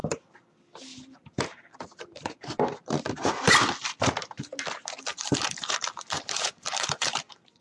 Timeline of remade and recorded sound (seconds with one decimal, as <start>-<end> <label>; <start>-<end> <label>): 0.0-0.5 remade; 0.5-0.9 recorded; 0.9-3.0 remade; 3.0-5.1 recorded; 5.1-7.6 remade